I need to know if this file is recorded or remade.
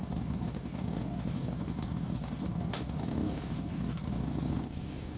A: remade